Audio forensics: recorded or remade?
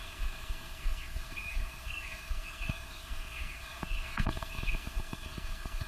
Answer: remade